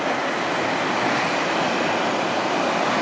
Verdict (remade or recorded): recorded